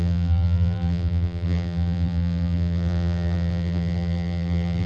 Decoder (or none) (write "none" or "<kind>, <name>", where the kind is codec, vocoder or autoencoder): vocoder, BigVGAN v2